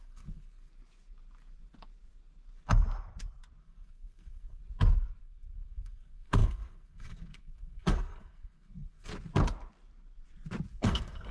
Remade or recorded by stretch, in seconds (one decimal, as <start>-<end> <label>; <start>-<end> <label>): 0.0-0.7 remade; 0.7-3.6 recorded; 3.6-4.6 remade; 4.6-5.2 recorded; 5.2-9.1 remade; 9.1-10.7 recorded; 10.7-11.3 remade